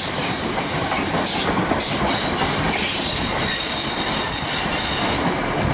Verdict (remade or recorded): recorded